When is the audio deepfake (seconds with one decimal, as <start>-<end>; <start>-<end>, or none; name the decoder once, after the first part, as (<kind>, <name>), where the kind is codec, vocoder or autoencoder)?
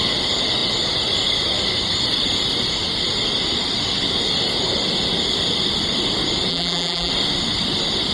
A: 6.5-7.1 (vocoder, BigVGAN v2)